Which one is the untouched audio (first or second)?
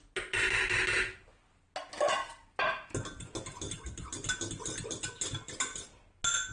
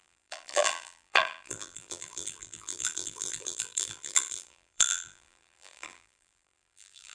first